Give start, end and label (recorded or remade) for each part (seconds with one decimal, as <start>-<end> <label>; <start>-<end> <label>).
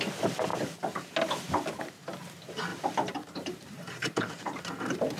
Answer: 0.0-2.7 recorded; 2.7-4.6 remade; 4.6-5.2 recorded